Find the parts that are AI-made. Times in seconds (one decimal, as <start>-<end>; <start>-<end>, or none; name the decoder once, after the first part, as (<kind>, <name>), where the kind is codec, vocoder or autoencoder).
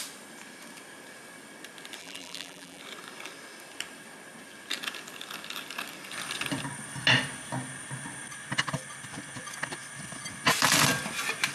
2.0-2.8 (vocoder, BigVGAN v2)